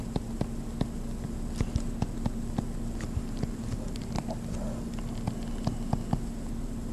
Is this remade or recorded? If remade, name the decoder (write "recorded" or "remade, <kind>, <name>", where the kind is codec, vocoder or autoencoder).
recorded